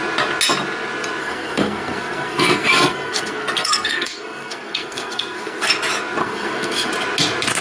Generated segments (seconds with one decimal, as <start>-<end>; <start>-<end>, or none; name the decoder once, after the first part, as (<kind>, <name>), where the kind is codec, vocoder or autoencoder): 1.2-5.7 (codec, SNAC); 6.2-6.9